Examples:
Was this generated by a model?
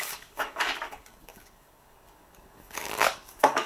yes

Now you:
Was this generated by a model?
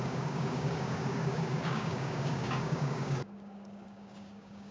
yes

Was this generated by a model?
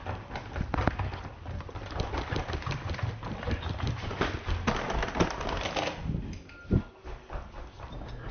no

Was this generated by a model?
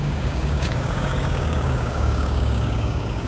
yes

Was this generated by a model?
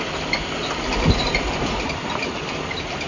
no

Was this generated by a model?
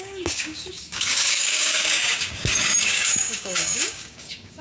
yes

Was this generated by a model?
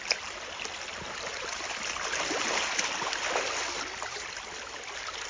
no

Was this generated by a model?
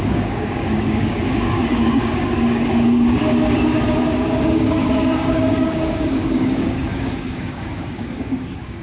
yes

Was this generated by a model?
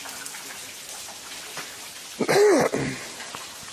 no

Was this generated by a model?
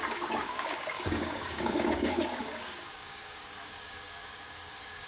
yes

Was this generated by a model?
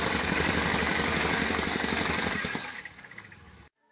yes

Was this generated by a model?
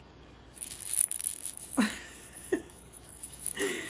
yes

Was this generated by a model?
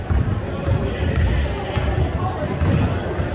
no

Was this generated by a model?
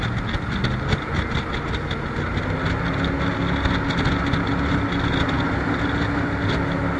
no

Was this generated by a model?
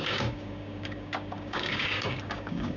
yes